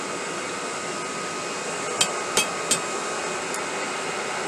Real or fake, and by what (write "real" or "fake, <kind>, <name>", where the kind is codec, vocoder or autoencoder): real